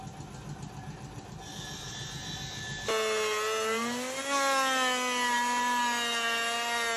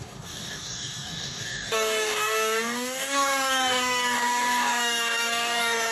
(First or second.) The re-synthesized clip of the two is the second